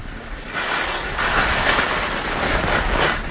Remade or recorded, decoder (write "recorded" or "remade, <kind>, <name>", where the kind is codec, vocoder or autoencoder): recorded